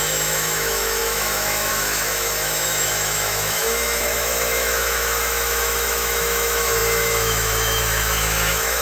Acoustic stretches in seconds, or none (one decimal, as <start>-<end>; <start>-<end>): none